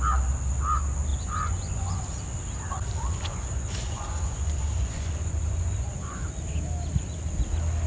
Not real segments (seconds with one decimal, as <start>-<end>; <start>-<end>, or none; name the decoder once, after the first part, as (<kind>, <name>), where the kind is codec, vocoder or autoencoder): 1.1-2.0 (vocoder, Vocos); 3.3-6.2